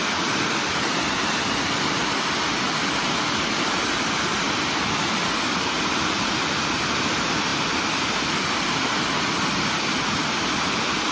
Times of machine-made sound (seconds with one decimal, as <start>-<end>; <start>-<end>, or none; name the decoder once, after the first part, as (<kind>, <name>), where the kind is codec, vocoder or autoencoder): none